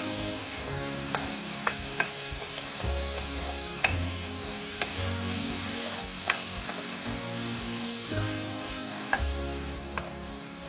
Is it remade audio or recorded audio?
remade